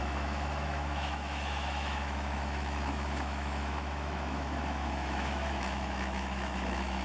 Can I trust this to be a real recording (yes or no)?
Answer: no